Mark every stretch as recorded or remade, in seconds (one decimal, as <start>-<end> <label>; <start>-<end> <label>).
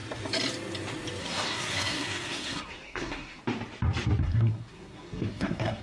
0.0-1.2 recorded; 1.2-3.4 remade; 3.4-4.2 recorded; 4.2-5.8 remade